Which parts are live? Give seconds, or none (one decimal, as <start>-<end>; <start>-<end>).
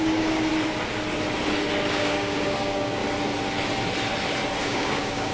0.5-1.9; 3.0-4.6